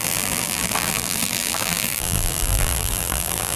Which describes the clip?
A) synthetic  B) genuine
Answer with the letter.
A